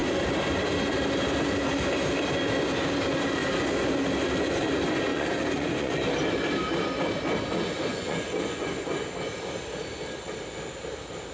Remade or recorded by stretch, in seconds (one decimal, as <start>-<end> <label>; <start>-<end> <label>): 0.0-5.1 recorded; 5.1-6.0 remade; 6.0-7.9 recorded; 7.9-8.7 remade; 8.7-11.3 recorded